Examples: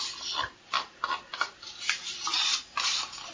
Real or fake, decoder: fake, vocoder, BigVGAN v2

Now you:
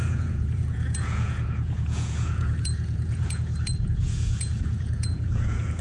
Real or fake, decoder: fake, vocoder, Vocos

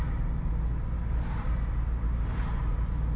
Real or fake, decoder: real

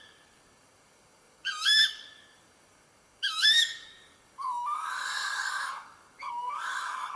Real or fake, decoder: fake, codec, DAC